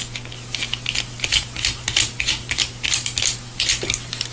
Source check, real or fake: real